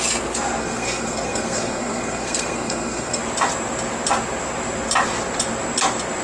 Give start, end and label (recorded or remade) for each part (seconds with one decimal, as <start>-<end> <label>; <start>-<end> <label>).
0.0-0.6 recorded; 0.6-3.2 remade; 3.2-6.2 recorded